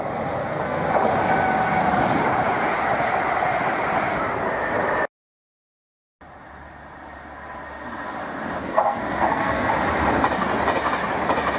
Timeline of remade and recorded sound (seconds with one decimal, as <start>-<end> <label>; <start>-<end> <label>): 0.0-0.4 recorded; 0.4-0.9 remade; 0.9-8.6 recorded; 8.6-9.7 remade; 9.7-11.6 recorded